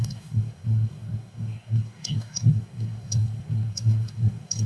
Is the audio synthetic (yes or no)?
yes